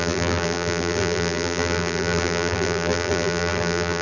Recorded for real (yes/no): no